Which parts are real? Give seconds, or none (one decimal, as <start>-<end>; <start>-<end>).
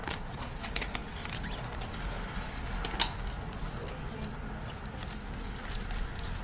0.6-6.4